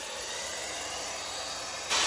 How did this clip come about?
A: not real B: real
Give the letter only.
B